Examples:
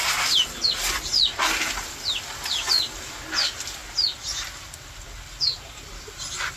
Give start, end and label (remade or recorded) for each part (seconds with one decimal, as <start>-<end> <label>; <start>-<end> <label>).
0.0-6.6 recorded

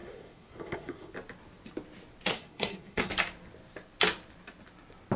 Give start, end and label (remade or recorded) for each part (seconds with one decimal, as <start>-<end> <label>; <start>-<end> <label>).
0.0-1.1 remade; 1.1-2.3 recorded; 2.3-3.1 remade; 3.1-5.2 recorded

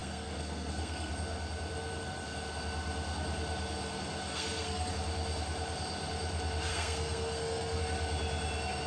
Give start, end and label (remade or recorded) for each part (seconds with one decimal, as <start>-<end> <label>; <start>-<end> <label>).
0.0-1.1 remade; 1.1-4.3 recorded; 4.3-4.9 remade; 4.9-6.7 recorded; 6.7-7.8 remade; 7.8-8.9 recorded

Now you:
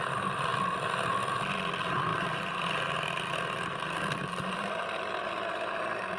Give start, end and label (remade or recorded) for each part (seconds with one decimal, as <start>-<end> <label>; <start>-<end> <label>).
0.0-6.2 recorded